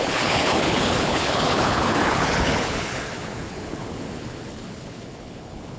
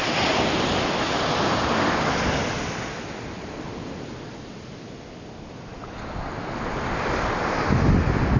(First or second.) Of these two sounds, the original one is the second